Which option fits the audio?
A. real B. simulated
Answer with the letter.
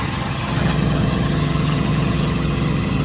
B